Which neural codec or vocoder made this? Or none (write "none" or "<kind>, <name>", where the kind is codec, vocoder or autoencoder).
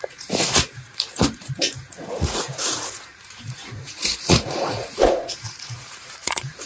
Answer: vocoder, Vocos